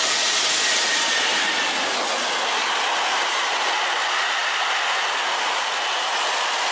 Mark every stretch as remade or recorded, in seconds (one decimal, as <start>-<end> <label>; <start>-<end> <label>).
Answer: 0.0-6.7 recorded